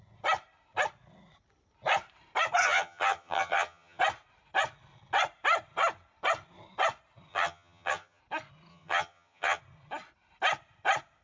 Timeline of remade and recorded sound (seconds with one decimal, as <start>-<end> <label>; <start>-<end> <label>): 0.0-2.6 recorded; 2.6-4.0 remade; 4.0-7.3 recorded; 7.3-8.2 remade; 8.2-8.7 recorded; 8.7-9.6 remade; 9.6-11.2 recorded